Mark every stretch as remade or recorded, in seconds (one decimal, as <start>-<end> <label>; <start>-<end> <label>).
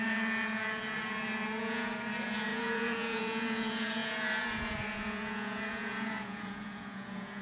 0.0-7.4 remade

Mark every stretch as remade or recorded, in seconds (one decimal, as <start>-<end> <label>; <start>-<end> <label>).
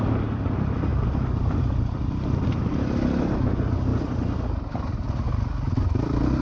0.0-0.9 remade; 0.9-1.6 recorded; 1.6-6.4 remade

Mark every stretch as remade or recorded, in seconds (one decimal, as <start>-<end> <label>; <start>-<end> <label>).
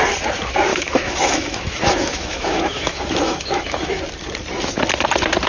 0.0-0.7 recorded; 0.7-4.0 remade; 4.0-5.5 recorded